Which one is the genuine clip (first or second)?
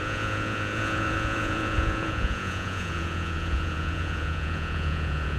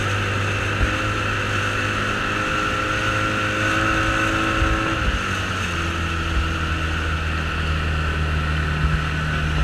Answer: second